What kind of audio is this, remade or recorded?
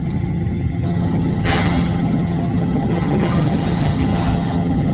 remade